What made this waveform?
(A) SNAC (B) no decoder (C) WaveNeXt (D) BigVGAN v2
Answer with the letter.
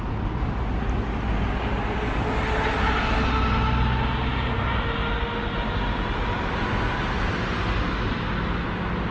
B